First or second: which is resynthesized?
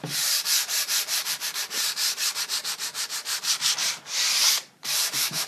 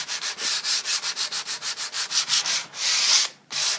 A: first